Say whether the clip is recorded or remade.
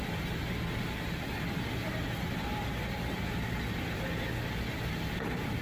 recorded